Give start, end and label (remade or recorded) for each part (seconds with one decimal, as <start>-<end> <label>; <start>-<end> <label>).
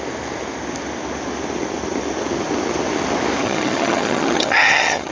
0.0-3.4 recorded; 3.4-5.1 remade